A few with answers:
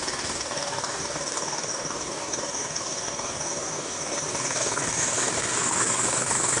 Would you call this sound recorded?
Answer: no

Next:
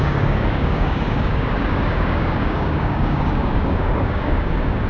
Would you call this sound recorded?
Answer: no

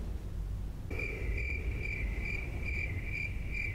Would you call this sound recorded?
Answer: yes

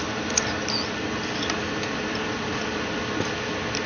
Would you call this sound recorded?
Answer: yes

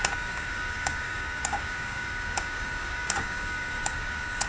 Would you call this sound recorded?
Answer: no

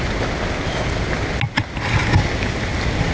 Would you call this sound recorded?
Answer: yes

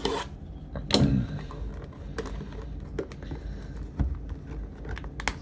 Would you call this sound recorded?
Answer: yes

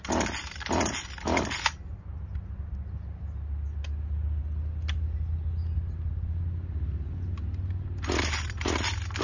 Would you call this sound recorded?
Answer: yes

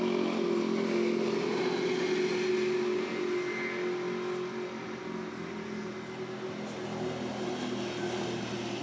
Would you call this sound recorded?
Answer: yes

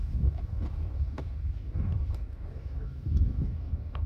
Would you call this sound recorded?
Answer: no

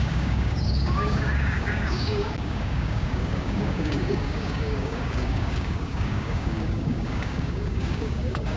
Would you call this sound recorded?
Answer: no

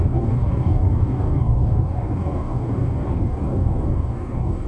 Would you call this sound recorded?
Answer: no